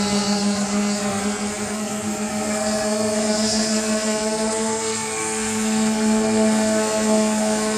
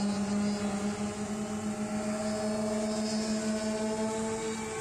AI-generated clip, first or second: first